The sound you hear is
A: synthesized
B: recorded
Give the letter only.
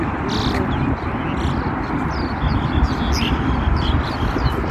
B